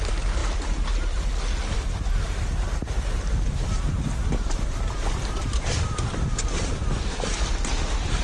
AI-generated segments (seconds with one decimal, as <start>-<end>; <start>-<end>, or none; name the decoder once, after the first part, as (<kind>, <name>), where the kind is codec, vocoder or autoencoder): none